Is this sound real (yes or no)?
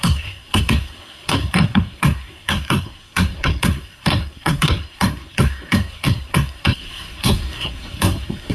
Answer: no